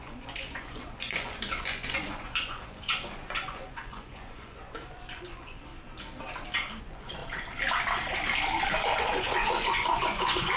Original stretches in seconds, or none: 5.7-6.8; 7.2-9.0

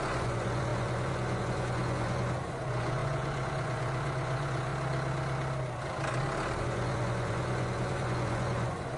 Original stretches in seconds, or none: 4.7-6.6

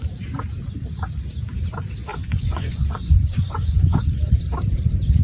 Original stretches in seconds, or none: 0.0-2.1; 4.1-5.2